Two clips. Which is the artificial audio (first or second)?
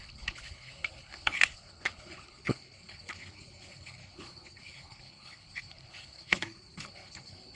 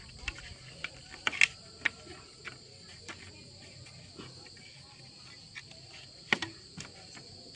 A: first